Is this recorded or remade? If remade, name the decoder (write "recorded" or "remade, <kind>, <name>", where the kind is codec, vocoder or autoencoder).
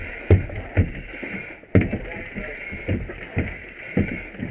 recorded